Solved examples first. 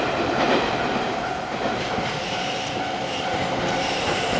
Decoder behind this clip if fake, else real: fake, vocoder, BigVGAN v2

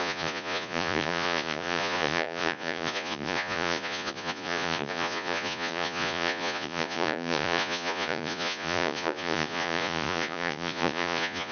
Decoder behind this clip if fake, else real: fake, vocoder, Vocos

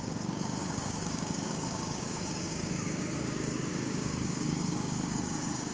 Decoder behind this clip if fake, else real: fake, codec, DAC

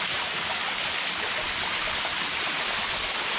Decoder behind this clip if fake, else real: real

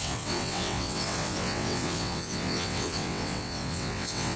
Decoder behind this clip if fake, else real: fake, vocoder, WaveNeXt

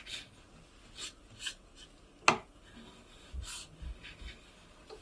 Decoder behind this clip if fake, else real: real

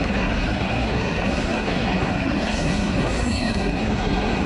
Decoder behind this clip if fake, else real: fake, codec, SNAC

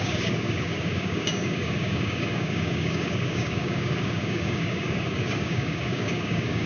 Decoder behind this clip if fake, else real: fake, codec, DAC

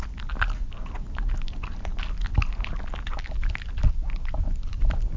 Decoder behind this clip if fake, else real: real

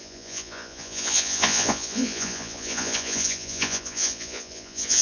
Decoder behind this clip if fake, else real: fake, vocoder, Vocos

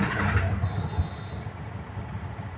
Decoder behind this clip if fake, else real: fake, vocoder, BigVGAN v2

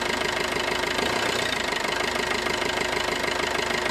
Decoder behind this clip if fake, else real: fake, vocoder, BigVGAN v2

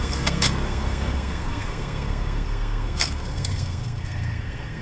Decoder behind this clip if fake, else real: fake, codec, SNAC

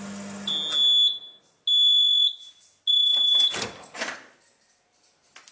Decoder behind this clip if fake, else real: real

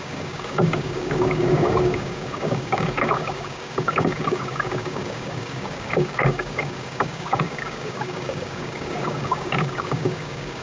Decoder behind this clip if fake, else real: fake, codec, DAC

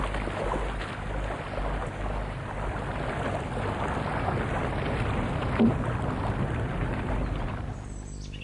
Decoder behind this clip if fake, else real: real